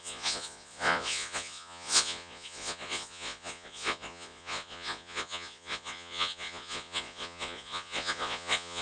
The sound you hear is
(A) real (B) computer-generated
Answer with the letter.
B